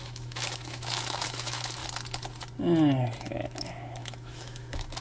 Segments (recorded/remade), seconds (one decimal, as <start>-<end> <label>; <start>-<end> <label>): 0.0-1.8 remade; 1.8-3.2 recorded; 3.2-5.0 remade